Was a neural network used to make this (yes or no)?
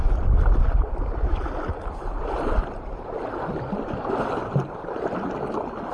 no